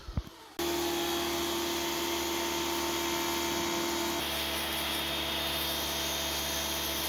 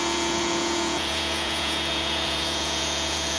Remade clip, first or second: second